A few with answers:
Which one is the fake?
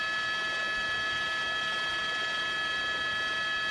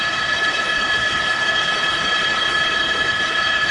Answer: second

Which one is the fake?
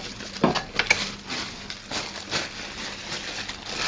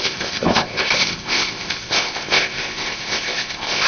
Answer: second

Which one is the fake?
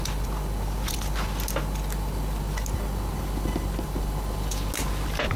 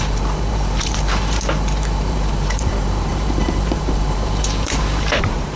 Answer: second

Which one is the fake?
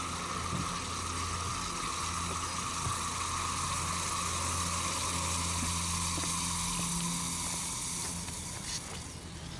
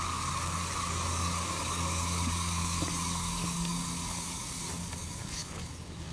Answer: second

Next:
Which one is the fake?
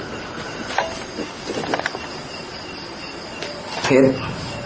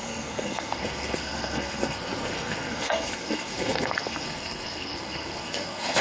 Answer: second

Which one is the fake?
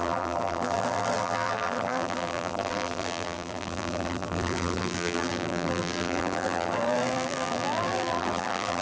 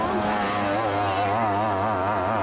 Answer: first